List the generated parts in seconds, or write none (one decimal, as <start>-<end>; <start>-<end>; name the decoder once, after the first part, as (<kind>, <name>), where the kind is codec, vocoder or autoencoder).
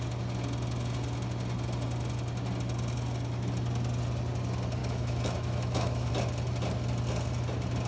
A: 4.8-6.1 (autoencoder, DAC-VAE)